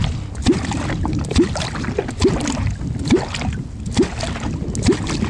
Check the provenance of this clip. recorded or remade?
recorded